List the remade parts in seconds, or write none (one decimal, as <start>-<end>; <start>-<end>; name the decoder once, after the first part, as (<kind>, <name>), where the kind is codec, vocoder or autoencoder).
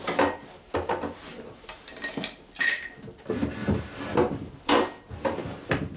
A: 1.5-2.1 (vocoder, BigVGAN v2); 3.6-4.7